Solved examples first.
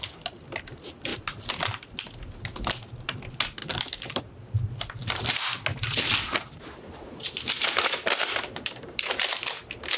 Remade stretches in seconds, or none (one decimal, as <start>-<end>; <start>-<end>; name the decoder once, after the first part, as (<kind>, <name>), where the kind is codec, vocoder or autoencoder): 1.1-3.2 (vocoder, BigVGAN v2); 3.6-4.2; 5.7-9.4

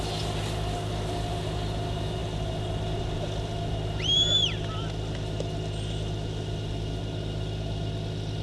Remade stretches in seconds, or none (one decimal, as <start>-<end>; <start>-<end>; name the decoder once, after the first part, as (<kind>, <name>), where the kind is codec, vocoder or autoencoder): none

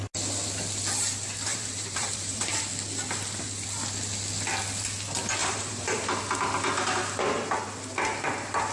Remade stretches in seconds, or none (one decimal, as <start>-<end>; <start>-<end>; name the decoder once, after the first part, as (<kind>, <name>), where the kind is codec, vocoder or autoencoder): 1.5-2.6 (vocoder, BigVGAN v2); 5.4-6.2